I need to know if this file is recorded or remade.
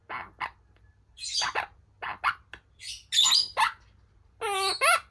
recorded